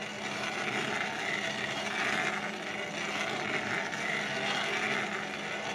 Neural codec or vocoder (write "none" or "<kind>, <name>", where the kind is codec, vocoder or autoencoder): none